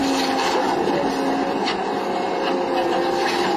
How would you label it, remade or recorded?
recorded